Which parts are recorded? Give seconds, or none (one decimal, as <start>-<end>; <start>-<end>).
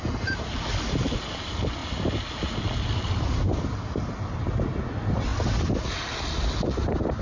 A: 0.0-7.2